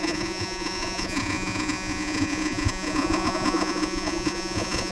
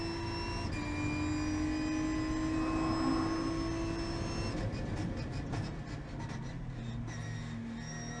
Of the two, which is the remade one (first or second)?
first